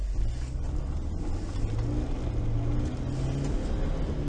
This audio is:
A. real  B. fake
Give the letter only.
A